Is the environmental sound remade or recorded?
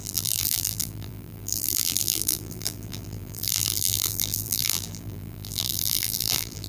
remade